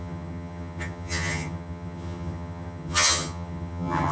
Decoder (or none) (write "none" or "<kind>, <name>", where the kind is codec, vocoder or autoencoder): vocoder, HiFi-GAN